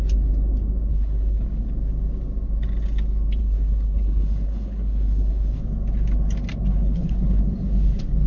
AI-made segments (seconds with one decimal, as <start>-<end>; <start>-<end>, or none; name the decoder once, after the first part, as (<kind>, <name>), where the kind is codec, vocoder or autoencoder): 0.9-1.7 (codec, HILCodec); 3.4-5.6; 6.7-7.4